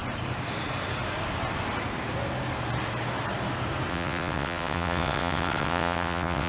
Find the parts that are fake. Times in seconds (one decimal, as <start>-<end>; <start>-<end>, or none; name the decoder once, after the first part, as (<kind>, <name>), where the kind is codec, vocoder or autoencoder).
3.9-6.5 (vocoder, WaveNeXt)